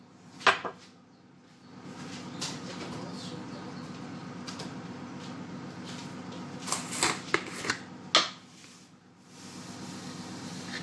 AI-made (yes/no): no